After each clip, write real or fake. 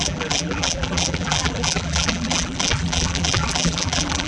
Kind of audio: fake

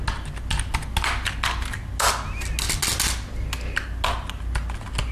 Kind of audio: real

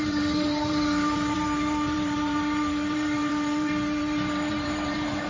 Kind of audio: fake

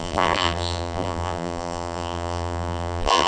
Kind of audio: fake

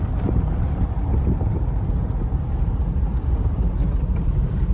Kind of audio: fake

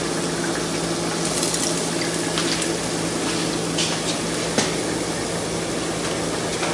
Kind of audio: real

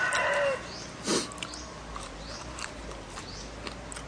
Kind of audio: real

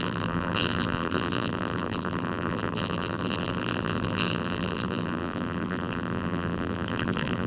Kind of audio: fake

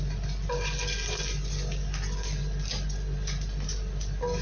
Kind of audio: real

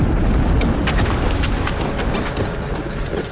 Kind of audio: real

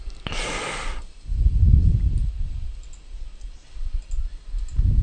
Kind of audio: real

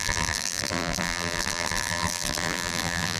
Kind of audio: fake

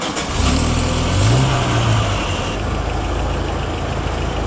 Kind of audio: real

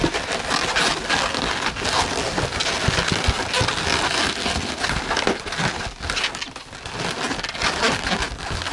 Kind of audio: real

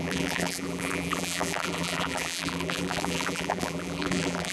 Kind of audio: fake